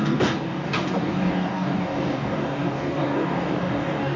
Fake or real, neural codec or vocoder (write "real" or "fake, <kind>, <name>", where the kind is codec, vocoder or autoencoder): fake, codec, DAC